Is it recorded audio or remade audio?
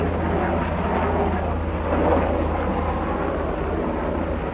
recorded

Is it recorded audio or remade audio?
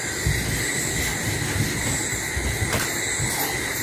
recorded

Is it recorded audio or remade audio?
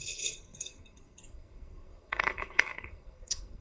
remade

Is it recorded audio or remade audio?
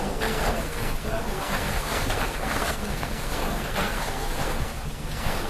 remade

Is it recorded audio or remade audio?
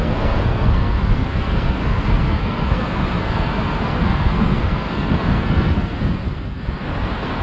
remade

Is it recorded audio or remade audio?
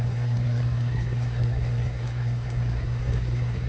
remade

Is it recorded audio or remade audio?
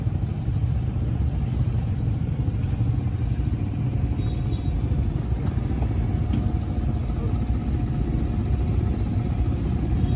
recorded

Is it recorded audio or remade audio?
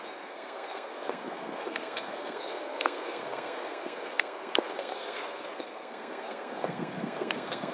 remade